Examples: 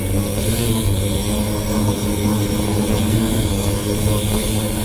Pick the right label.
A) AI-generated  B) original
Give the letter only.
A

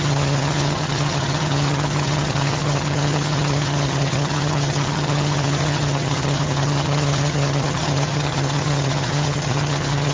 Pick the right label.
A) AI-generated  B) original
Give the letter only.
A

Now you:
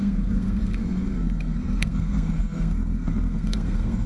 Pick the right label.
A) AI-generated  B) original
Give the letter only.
A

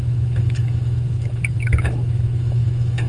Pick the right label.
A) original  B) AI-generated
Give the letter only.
B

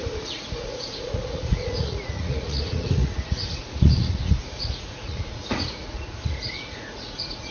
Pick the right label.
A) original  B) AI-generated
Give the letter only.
B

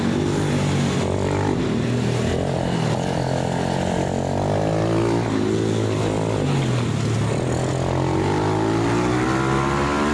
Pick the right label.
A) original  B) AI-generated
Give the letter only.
A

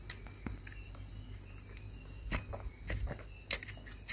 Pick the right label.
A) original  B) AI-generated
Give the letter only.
A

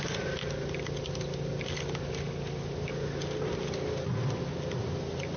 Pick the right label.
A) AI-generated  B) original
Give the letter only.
B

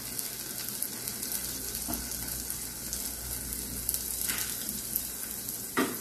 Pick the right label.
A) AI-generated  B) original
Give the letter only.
B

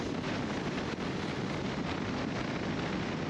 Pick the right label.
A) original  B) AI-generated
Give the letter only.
A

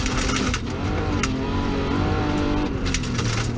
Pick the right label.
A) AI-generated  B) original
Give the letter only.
B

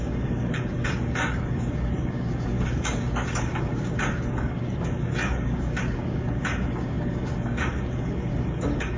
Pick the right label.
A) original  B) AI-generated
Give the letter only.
B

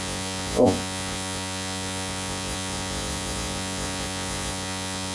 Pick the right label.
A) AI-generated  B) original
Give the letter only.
A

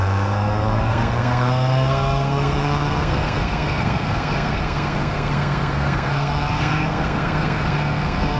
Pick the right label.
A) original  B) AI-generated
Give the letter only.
B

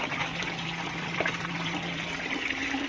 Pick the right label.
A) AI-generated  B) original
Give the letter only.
B